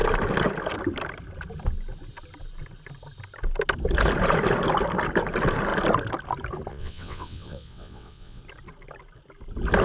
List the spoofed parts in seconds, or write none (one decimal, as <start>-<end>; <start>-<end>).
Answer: 6.7-8.4